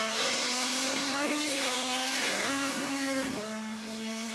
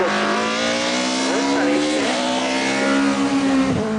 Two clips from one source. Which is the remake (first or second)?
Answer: first